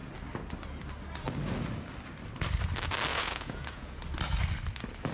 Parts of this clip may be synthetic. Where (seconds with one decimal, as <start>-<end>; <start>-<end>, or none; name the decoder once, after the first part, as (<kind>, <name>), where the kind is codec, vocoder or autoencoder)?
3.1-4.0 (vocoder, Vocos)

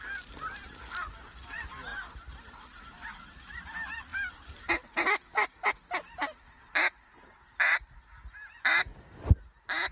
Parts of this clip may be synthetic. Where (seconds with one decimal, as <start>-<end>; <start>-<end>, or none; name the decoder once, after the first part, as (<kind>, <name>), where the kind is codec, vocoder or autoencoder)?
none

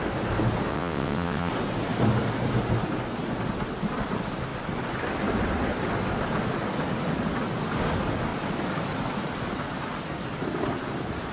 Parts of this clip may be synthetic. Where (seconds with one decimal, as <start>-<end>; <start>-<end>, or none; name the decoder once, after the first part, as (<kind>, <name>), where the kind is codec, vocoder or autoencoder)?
0.7-1.5 (vocoder, WaveNeXt)

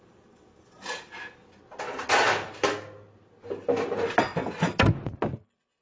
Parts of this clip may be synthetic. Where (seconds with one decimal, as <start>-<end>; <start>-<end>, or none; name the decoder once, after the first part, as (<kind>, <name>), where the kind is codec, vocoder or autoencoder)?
none

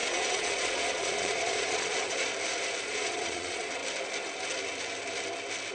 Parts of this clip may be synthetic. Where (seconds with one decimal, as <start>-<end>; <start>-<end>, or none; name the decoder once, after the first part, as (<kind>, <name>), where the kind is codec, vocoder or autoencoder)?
0.0-2.3 (vocoder, Vocos); 2.8-3.8

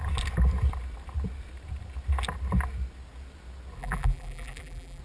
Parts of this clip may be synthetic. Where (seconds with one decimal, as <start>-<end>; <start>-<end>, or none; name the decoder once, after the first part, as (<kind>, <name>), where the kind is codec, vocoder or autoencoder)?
3.8-5.0 (vocoder, BigVGAN v2)